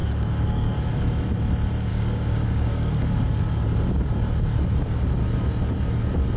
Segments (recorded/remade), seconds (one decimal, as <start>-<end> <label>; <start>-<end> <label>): 0.0-0.9 remade; 0.9-1.9 recorded; 1.9-3.4 remade; 3.4-6.4 recorded